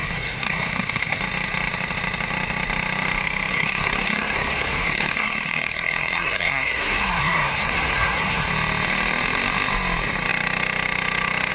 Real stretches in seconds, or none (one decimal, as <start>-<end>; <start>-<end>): 1.2-3.5; 8.5-11.5